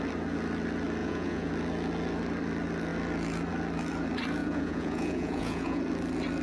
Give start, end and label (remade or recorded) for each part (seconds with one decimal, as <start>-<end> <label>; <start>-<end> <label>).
0.0-1.0 recorded; 1.0-1.5 remade; 1.5-4.4 recorded; 4.4-5.8 remade; 5.8-6.4 recorded